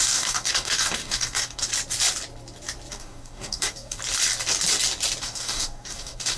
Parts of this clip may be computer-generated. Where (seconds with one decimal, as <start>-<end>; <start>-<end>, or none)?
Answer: 0.0-1.7; 2.9-4.0; 5.2-6.4